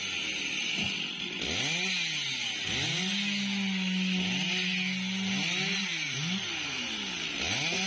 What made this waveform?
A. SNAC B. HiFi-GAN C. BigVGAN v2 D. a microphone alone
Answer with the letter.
D